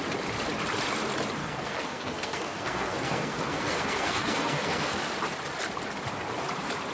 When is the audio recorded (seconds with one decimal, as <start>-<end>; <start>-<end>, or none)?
0.0-1.4; 5.0-6.9